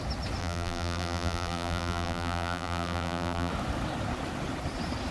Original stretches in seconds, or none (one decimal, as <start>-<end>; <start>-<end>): 0.0-0.4; 3.5-5.1